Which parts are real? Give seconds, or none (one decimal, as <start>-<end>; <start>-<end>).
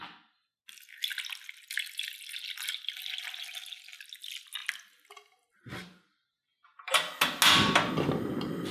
0.0-4.6; 5.7-8.7